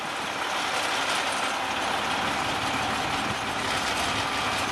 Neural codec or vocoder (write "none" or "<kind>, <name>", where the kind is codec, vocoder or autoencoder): none